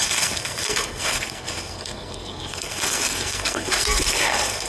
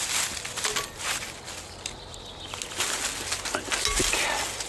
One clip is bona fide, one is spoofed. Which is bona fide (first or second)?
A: second